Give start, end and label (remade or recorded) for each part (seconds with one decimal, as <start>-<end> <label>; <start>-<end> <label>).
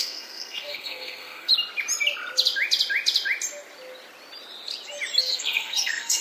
0.0-1.5 remade; 1.5-5.2 recorded; 5.2-6.2 remade